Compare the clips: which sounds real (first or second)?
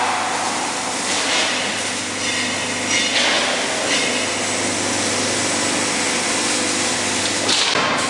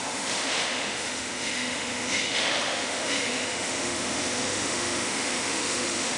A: first